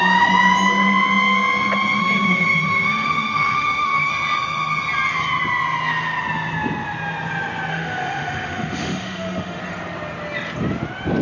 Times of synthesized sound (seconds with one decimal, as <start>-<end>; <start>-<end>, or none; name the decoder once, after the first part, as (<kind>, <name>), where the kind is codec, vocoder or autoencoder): 2.0-4.1 (autoencoder, DAC-VAE); 7.7-9.6